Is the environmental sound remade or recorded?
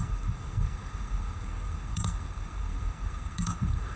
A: remade